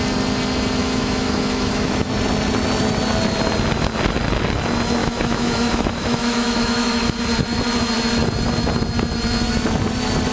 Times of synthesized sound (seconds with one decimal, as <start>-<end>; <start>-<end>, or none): 0.8-2.1; 5.0-7.2